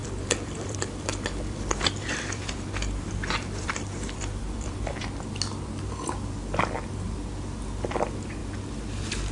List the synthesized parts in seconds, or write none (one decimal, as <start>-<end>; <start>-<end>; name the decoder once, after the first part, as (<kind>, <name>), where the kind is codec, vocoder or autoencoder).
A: 0.0-5.0 (vocoder, BigVGAN v2)